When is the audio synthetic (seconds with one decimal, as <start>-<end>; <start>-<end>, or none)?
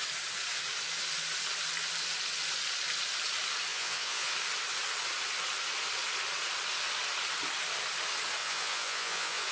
3.7-4.3; 8.4-9.5